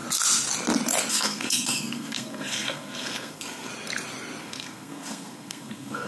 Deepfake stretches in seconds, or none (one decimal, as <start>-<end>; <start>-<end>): 1.1-3.7; 4.4-6.1